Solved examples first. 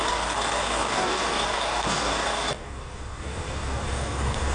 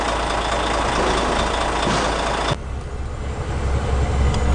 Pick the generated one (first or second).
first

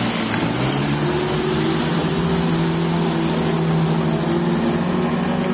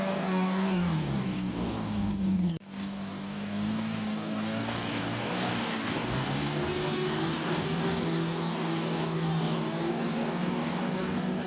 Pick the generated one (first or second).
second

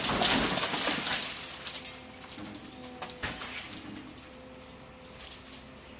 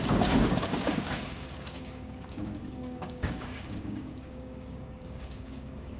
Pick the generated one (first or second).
second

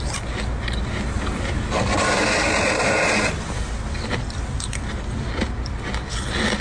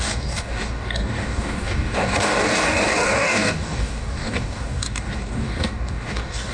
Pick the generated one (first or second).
second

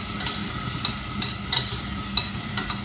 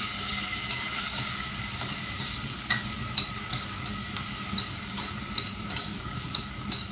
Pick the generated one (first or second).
second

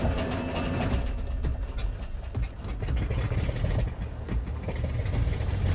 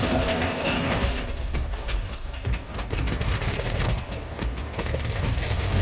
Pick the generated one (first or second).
second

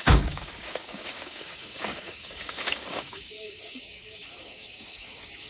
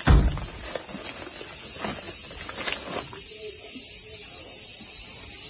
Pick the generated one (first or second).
first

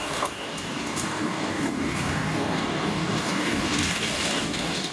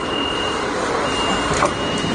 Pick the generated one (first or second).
first